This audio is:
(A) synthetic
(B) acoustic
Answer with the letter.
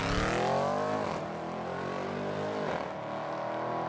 B